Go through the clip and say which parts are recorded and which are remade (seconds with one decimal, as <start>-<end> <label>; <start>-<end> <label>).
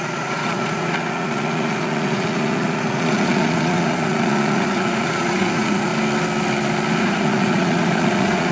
0.0-5.9 remade; 5.9-7.0 recorded; 7.0-8.5 remade